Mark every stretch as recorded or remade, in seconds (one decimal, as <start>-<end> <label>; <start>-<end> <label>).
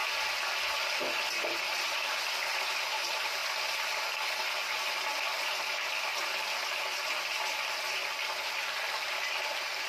0.0-9.9 recorded